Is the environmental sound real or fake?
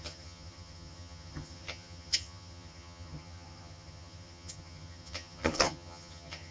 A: fake